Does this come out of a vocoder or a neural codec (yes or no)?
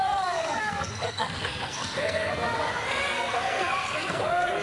yes